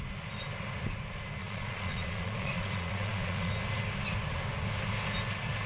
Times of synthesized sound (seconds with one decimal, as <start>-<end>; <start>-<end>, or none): 1.4-3.5